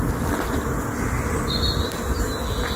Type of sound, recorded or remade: recorded